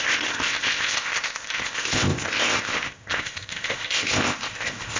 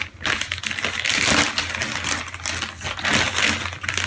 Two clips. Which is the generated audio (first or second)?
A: first